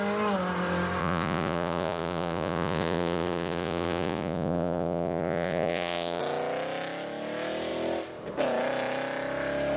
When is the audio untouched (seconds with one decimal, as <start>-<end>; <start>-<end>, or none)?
0.0-1.0; 6.2-9.8